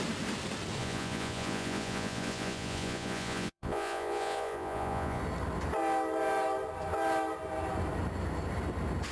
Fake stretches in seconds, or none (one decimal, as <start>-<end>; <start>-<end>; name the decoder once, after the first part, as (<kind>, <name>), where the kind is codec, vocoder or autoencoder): 0.8-5.2 (vocoder, Vocos)